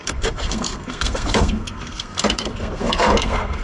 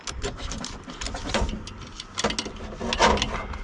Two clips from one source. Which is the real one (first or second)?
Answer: second